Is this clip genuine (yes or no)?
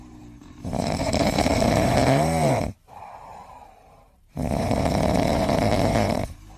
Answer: no